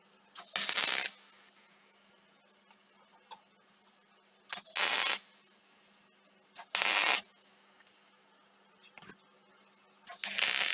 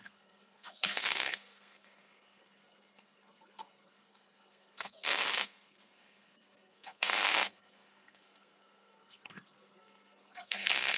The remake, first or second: second